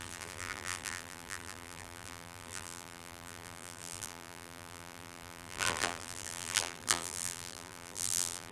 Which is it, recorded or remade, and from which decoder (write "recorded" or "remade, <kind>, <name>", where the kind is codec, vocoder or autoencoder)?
remade, vocoder, BigVGAN v2